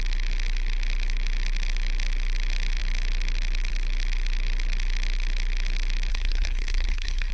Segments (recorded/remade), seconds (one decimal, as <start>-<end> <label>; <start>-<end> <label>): 0.0-6.1 recorded; 6.1-7.3 remade